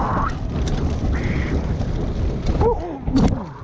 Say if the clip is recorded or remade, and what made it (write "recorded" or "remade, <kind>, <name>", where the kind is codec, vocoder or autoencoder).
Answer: recorded